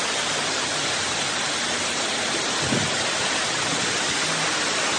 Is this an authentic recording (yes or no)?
yes